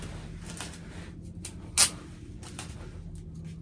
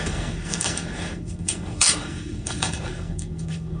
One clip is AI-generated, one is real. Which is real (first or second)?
first